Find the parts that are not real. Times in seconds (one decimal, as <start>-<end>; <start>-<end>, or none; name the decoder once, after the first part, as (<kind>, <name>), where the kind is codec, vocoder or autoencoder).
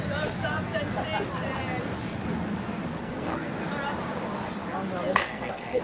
3.0-3.5 (codec, SNAC); 5.1-5.8